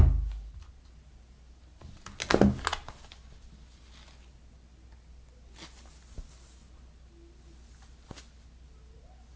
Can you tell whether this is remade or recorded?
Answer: recorded